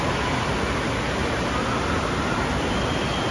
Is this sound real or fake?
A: real